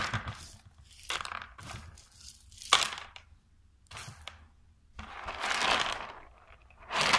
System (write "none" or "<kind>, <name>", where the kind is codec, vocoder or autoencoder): none